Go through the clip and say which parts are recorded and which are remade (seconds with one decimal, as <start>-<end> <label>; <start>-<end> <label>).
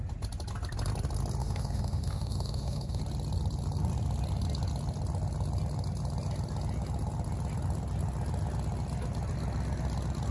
0.0-1.4 recorded; 1.4-3.0 remade; 3.0-10.3 recorded